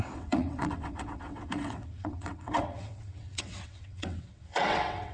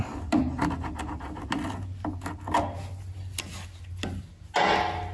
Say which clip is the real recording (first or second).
second